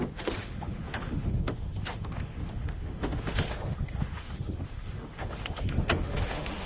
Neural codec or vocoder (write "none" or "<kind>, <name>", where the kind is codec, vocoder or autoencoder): autoencoder, DAC-VAE